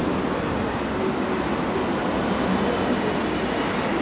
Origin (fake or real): real